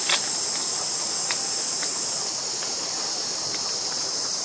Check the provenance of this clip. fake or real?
real